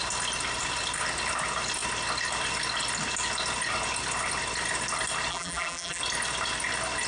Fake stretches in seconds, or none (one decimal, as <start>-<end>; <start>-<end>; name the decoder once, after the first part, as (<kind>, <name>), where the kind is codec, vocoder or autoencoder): 5.3-6.0 (vocoder, BigVGAN v2)